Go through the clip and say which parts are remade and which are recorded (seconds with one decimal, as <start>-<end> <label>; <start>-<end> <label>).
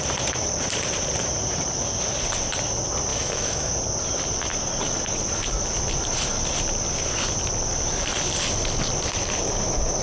0.0-3.1 recorded; 3.1-3.7 remade; 3.7-10.0 recorded